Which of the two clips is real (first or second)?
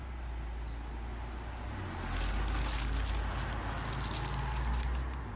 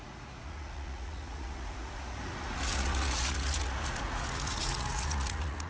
first